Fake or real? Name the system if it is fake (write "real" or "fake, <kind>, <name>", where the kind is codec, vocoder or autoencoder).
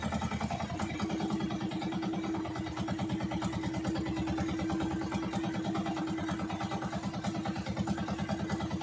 real